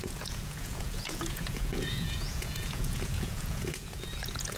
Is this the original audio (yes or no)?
no